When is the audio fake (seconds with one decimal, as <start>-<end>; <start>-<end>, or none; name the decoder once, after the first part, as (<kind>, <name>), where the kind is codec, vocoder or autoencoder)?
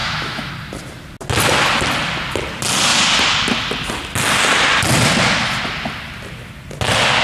0.0-0.5 (autoencoder, DAC-VAE)